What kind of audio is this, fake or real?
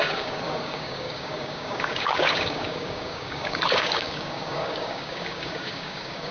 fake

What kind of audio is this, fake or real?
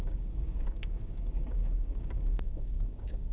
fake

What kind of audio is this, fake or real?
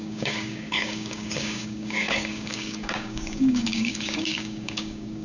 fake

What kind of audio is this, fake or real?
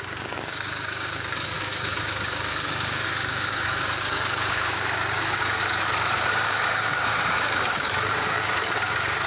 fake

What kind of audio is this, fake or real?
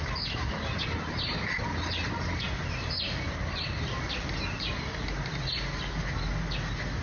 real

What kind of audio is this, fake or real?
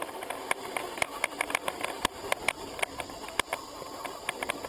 real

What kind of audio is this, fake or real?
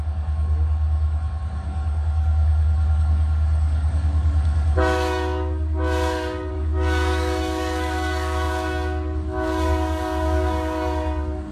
fake